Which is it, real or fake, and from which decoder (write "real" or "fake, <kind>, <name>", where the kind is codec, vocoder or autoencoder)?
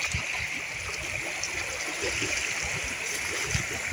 fake, vocoder, BigVGAN v2